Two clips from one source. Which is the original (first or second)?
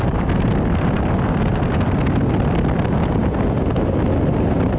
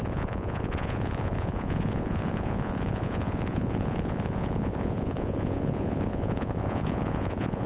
first